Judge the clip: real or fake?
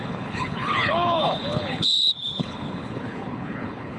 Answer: fake